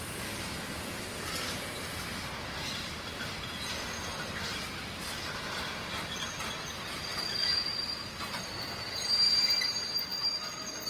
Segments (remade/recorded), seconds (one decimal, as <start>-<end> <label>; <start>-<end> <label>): 0.0-4.5 recorded; 4.5-5.1 remade; 5.1-10.1 recorded; 10.1-10.9 remade